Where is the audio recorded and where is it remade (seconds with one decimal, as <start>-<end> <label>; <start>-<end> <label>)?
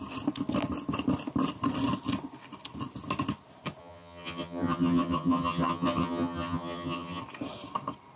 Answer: 0.0-3.8 recorded; 3.8-7.2 remade; 7.2-8.2 recorded